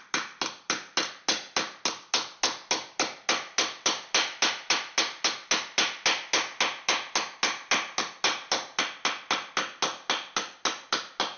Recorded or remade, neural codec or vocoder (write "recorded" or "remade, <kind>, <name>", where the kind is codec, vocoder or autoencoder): recorded